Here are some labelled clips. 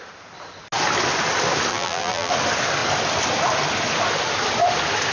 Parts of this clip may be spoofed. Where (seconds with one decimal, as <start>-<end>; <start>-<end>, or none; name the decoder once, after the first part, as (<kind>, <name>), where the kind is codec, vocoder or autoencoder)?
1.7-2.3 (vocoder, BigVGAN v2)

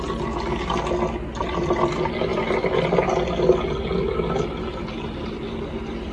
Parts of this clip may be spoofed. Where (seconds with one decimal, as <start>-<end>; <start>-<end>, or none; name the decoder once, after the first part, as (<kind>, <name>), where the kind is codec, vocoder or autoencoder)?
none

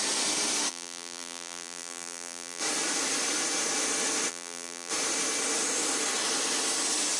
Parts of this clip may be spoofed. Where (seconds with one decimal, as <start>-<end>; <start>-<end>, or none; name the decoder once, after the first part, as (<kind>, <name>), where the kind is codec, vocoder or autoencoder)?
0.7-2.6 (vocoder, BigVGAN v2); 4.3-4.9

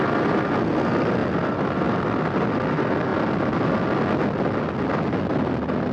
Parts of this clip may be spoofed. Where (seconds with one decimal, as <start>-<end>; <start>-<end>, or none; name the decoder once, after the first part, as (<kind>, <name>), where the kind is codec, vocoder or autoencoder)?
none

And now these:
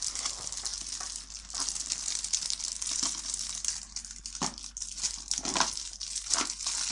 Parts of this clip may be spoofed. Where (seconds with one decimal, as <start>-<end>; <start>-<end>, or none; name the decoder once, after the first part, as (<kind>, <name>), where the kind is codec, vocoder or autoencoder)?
none

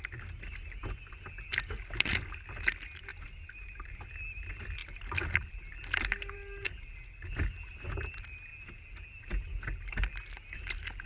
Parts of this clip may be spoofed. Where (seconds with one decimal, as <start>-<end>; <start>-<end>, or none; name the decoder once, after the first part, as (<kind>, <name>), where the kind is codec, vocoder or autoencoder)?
3.1-4.0 (vocoder, BigVGAN v2)

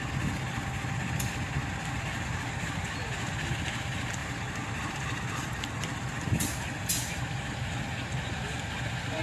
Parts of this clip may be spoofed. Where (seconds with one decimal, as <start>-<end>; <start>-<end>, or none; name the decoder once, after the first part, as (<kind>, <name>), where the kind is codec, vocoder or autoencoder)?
4.2-7.2 (vocoder, BigVGAN v2)